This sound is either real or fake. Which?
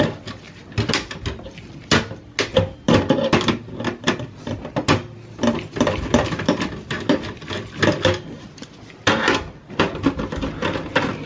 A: real